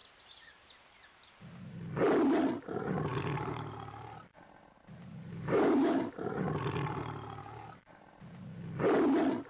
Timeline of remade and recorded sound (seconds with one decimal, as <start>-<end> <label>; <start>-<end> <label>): 0.0-3.1 recorded; 3.1-3.7 remade; 3.7-5.1 recorded; 5.1-6.1 remade; 6.1-7.4 recorded; 7.4-8.1 remade; 8.1-9.5 recorded